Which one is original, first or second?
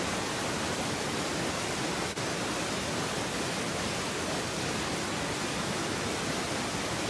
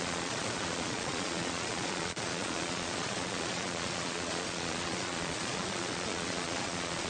first